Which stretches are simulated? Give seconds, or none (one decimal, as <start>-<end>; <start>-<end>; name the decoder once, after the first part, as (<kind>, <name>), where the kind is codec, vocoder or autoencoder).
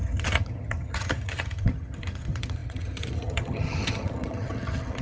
0.0-5.0 (vocoder, HiFi-GAN)